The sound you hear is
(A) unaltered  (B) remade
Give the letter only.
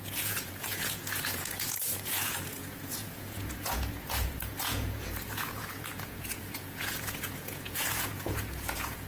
B